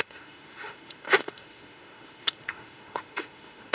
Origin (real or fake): fake